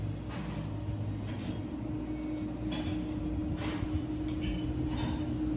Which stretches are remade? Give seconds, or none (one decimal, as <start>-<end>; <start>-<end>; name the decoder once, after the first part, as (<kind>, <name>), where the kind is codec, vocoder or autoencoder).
none